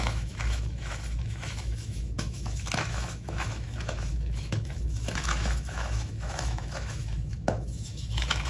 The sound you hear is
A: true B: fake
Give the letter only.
B